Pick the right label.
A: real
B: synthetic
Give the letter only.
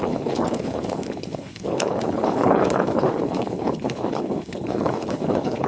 B